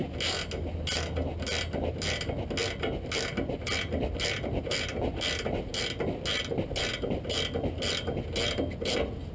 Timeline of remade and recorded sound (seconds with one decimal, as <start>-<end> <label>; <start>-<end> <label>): 0.0-9.3 recorded